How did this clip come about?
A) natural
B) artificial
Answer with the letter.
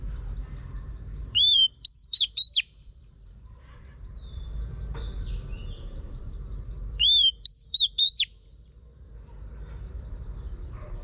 B